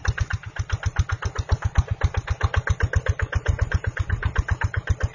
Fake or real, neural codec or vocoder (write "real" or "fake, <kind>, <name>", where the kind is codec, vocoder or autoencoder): real